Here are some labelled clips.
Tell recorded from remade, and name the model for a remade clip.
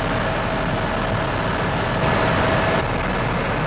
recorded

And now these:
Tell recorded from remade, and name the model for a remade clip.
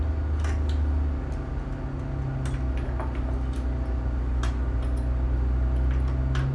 recorded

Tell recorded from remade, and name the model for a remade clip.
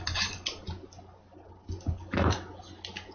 recorded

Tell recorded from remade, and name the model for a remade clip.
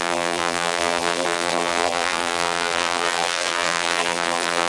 remade, vocoder, BigVGAN v2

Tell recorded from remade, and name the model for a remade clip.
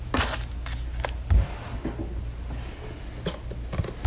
recorded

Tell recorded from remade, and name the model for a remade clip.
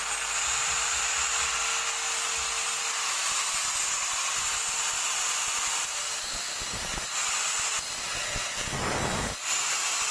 recorded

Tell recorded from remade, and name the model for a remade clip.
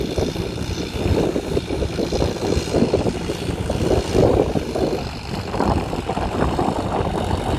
recorded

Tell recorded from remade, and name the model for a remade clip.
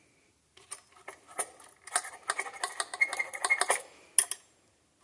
recorded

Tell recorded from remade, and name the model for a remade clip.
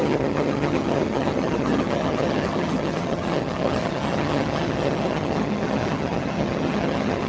remade, vocoder, HiFi-GAN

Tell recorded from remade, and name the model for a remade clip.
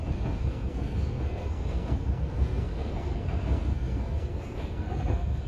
remade, codec, SNAC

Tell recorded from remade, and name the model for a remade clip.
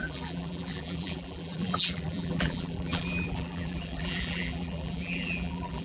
remade, vocoder, BigVGAN v2